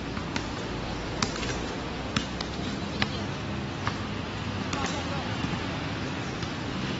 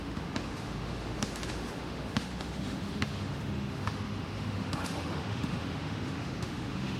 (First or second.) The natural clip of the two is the first